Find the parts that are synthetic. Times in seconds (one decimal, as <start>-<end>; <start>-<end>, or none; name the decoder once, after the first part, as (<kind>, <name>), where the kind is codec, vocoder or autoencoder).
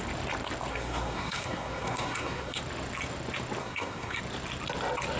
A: 0.7-2.6 (codec, SNAC); 3.6-4.2